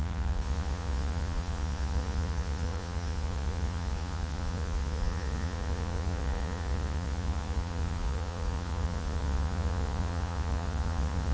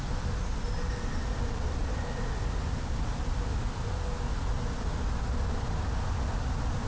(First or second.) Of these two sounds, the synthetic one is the first